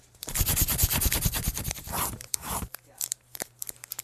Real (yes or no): no